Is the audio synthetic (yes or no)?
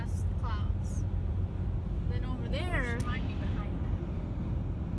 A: no